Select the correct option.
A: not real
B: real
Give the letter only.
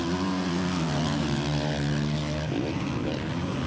B